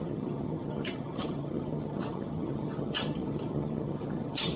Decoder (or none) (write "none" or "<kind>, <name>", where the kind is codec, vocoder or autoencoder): vocoder, HiFi-GAN